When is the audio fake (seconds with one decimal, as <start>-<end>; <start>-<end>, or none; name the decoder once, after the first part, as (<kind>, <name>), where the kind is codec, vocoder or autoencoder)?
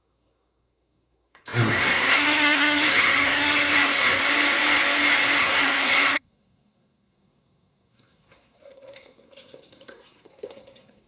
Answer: 0.0-4.2 (codec, SNAC); 5.4-11.1